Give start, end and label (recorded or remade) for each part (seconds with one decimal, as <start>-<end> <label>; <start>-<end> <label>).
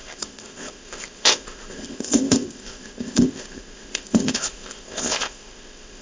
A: 0.0-6.0 remade